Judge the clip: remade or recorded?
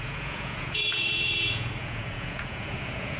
remade